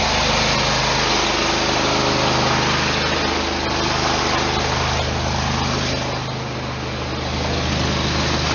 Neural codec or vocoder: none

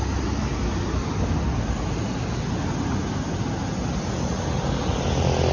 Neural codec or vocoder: none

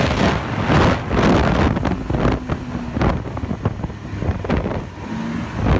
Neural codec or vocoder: none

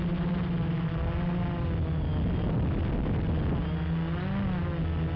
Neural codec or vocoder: none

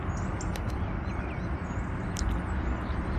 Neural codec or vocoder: none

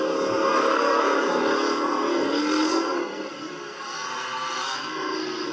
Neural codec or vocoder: codec, SNAC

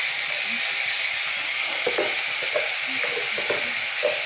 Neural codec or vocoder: none